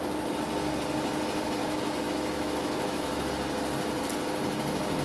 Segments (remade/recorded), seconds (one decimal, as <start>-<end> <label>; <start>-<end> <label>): 0.0-1.6 recorded; 1.6-3.3 remade; 3.3-5.0 recorded

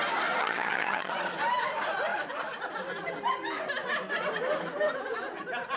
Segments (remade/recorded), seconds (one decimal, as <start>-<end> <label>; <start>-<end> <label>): 0.0-0.4 recorded; 0.4-1.1 remade; 1.1-5.8 recorded

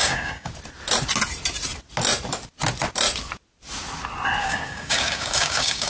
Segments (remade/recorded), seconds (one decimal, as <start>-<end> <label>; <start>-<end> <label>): 0.0-0.5 remade; 0.5-4.4 recorded; 4.4-5.9 remade

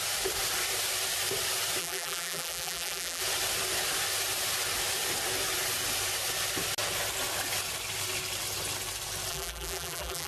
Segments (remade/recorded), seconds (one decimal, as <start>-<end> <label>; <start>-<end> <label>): 0.0-1.8 recorded; 1.8-3.2 remade; 3.2-9.3 recorded; 9.3-10.3 remade